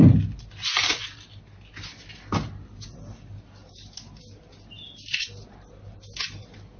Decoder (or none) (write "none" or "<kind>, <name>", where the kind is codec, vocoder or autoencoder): none